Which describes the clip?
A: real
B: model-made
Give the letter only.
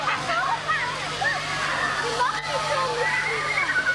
A